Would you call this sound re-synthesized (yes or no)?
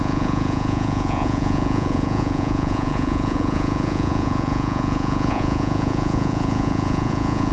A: yes